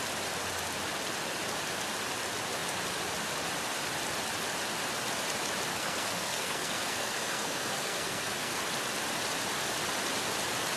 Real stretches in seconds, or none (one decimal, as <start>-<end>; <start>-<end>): 0.0-5.7; 8.6-10.8